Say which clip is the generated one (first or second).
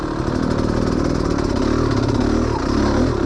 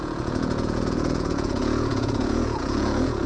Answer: second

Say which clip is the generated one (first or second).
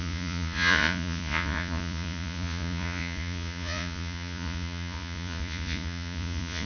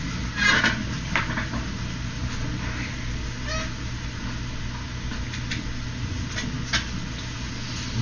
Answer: first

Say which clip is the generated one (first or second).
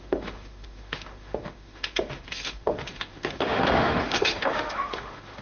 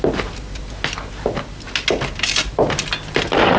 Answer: first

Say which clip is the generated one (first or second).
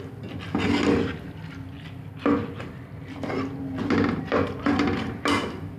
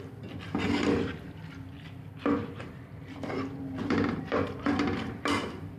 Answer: second